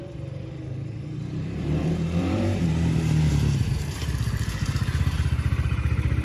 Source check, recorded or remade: remade